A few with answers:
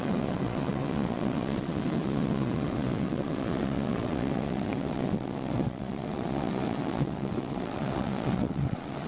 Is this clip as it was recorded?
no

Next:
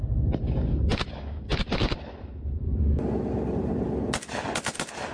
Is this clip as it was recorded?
yes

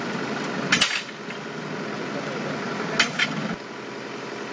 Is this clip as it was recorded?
yes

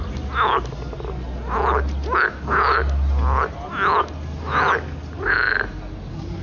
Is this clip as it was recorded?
yes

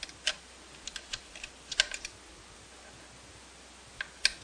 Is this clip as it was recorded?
yes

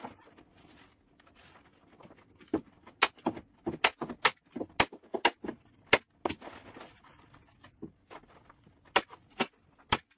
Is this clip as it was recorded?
yes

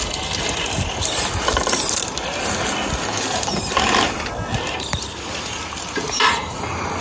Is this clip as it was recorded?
yes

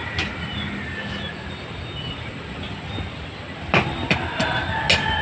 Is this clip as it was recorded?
yes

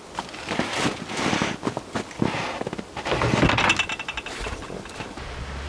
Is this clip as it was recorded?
yes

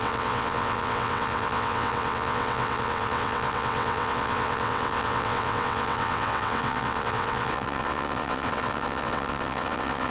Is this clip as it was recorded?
no